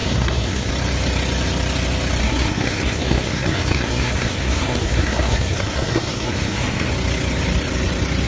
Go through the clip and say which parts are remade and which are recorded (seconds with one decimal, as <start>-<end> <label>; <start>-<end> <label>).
0.0-0.7 remade; 0.7-2.2 recorded; 2.2-6.9 remade; 6.9-8.3 recorded